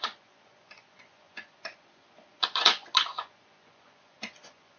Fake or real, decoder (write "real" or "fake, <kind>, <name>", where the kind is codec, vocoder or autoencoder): fake, vocoder, Vocos